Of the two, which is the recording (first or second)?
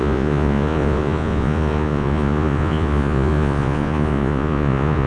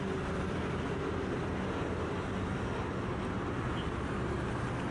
second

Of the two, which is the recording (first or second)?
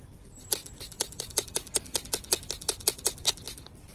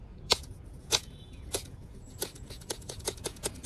first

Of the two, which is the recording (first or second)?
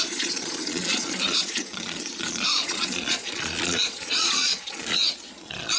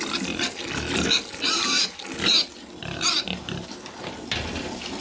second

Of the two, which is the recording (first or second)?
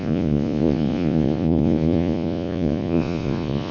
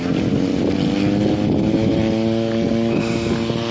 second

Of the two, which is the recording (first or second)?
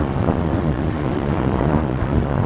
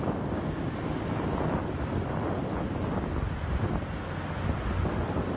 second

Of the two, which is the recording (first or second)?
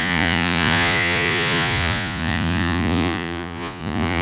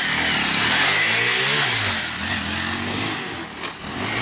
second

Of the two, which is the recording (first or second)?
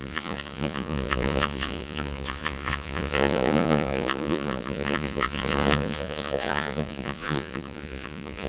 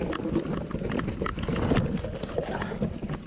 second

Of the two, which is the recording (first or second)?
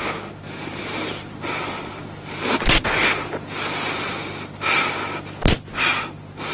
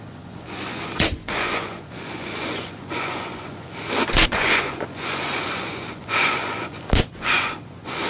first